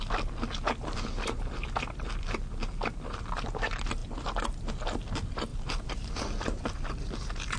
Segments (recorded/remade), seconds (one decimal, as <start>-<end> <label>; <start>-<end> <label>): 0.0-5.5 recorded; 5.5-6.6 remade; 6.6-7.6 recorded